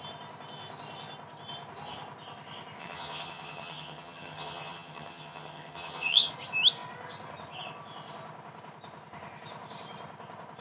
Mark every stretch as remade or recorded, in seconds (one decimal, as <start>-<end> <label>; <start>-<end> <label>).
0.0-2.8 recorded; 2.8-6.3 remade; 6.3-10.6 recorded